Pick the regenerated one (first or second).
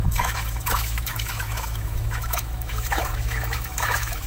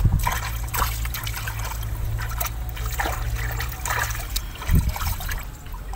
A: first